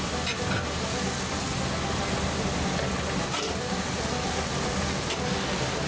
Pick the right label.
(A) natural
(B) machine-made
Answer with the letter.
A